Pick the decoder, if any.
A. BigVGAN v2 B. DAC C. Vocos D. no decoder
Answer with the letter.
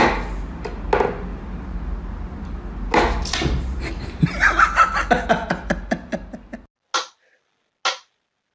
D